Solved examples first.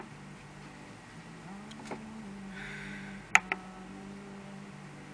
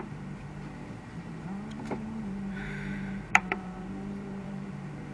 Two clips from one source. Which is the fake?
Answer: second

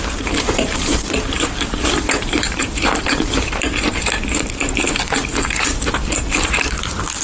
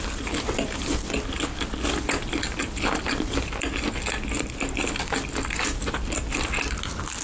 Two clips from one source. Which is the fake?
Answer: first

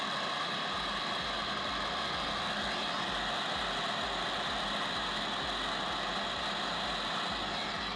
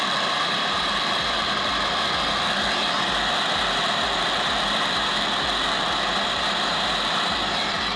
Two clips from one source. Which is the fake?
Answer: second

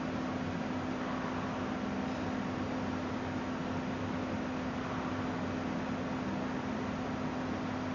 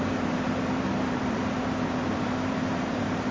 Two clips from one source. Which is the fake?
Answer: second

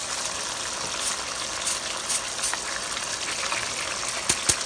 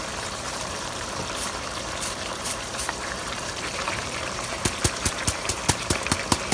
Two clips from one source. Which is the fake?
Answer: second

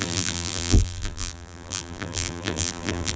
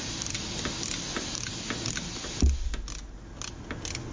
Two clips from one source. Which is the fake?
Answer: first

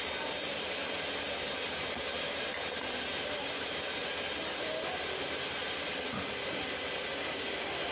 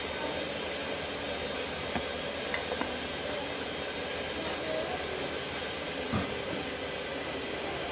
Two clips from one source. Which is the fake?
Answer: first